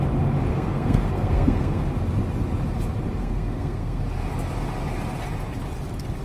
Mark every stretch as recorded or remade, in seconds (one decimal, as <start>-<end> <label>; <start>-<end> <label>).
0.0-0.5 recorded; 0.5-1.8 remade; 1.8-3.2 recorded; 3.2-4.0 remade; 4.0-6.2 recorded